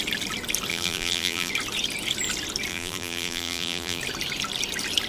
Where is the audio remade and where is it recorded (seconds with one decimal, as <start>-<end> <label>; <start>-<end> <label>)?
0.0-0.7 recorded; 0.7-1.5 remade; 1.5-2.7 recorded; 2.7-4.0 remade; 4.0-5.1 recorded